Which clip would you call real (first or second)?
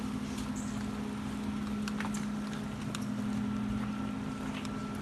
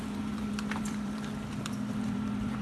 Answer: first